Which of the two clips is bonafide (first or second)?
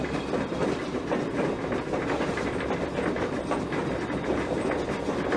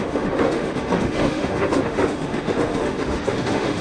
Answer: first